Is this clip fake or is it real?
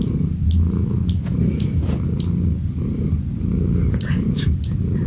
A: real